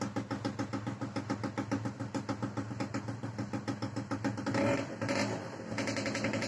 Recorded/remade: recorded